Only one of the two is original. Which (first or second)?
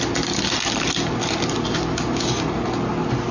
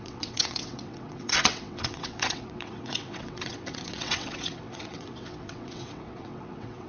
first